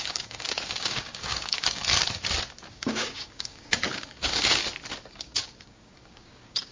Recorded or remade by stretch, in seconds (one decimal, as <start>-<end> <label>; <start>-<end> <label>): 0.0-1.8 remade; 1.8-2.7 recorded; 2.7-4.6 remade; 4.6-5.1 recorded; 5.1-6.7 remade